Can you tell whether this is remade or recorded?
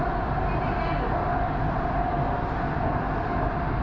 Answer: recorded